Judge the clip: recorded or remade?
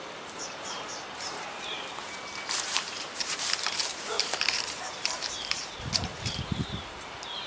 remade